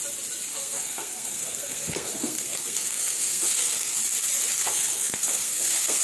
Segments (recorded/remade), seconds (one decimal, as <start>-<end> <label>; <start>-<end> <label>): 0.0-0.5 recorded; 0.5-4.0 remade; 4.0-4.6 recorded; 4.6-6.0 remade